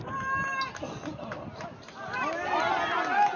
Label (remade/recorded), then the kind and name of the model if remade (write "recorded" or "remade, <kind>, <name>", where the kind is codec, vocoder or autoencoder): recorded